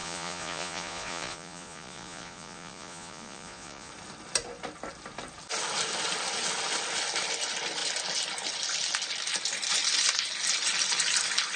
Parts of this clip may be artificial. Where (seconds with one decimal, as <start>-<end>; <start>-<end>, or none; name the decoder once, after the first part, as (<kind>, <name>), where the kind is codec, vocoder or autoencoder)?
0.0-3.9 (vocoder, Vocos)